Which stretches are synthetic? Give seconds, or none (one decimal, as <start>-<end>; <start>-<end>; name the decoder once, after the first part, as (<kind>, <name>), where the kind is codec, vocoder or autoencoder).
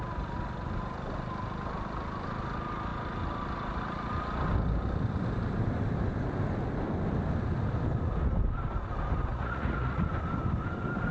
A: 9.3-10.1 (vocoder, Vocos)